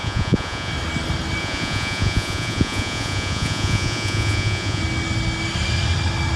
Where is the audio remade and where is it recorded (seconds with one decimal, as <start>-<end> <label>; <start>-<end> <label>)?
0.0-0.7 remade; 0.7-1.4 recorded; 1.4-4.8 remade; 4.8-6.4 recorded